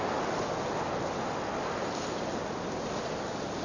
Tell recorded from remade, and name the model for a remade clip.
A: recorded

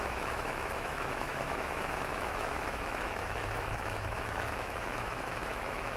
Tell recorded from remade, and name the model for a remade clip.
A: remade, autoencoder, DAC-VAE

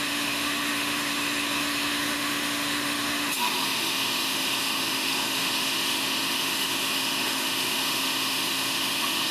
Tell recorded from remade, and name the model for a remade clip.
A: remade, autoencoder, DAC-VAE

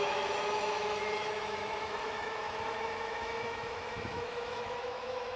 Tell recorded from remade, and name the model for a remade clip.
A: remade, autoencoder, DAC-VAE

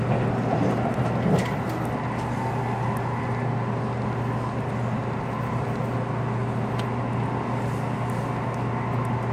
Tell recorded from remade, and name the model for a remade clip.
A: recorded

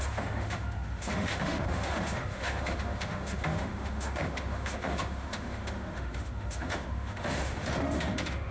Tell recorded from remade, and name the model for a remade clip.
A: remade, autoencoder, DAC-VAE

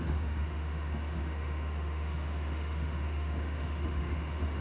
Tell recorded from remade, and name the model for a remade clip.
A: remade, autoencoder, DAC-VAE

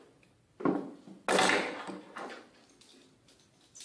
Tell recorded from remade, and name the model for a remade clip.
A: recorded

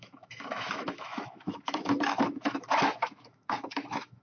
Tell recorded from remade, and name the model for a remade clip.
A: remade, autoencoder, DAC-VAE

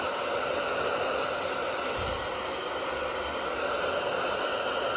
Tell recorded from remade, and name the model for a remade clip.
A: recorded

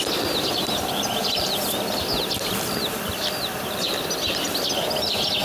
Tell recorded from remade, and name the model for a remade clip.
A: recorded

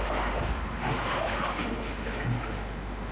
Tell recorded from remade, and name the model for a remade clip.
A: remade, autoencoder, DAC-VAE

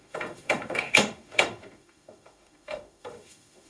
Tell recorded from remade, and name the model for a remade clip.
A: remade, autoencoder, DAC-VAE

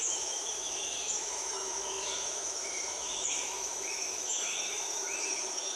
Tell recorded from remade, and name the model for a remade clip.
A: remade, autoencoder, DAC-VAE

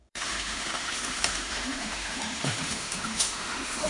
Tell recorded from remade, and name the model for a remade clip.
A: remade, autoencoder, DAC-VAE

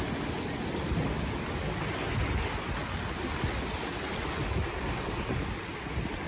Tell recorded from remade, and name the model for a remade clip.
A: recorded